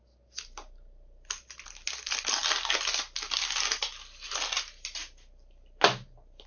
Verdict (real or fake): real